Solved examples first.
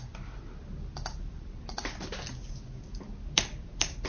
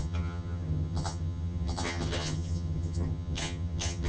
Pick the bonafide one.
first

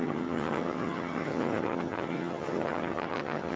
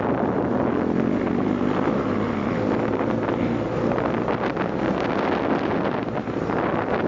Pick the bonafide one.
second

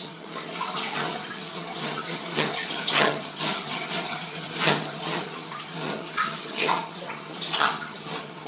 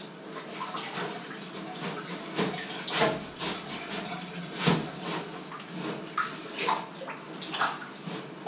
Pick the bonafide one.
second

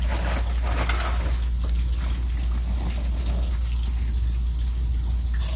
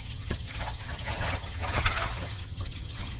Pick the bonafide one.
first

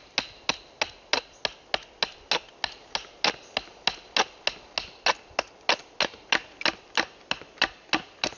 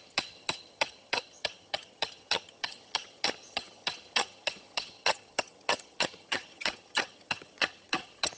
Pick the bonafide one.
first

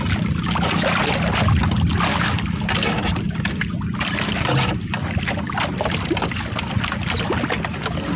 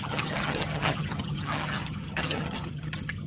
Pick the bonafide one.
first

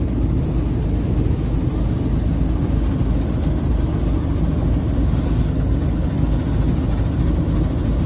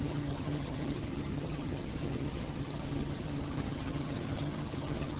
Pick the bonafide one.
first